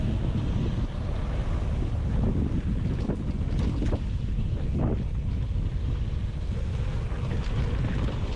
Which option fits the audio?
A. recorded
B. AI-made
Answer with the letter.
A